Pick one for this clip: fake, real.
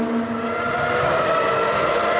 real